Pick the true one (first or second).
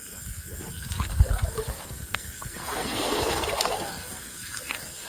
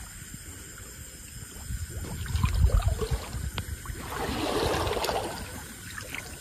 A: second